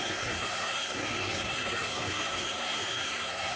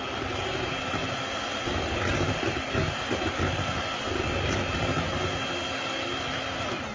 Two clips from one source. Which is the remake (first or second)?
first